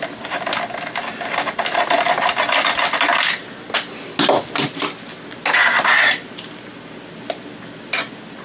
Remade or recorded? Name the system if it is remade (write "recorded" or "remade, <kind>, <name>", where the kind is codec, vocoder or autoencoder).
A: recorded